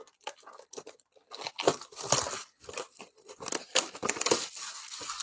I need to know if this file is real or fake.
fake